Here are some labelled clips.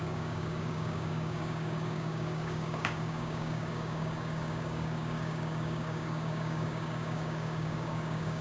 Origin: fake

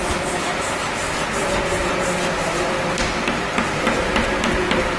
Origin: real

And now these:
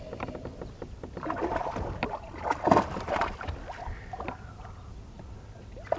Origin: real